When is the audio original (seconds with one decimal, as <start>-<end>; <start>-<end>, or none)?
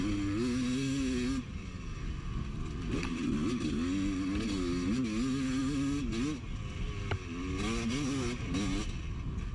0.0-9.5